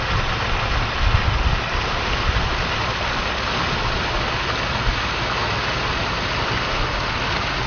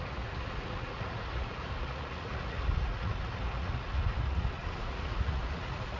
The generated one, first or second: second